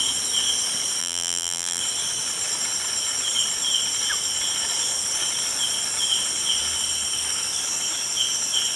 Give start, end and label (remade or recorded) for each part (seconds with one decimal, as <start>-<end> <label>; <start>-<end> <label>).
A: 0.0-1.0 recorded; 1.0-1.8 remade; 1.8-8.8 recorded